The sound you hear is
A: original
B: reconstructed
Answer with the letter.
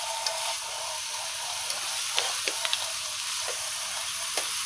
B